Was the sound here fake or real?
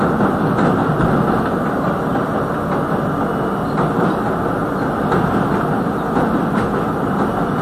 real